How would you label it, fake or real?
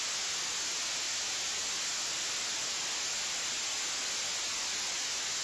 real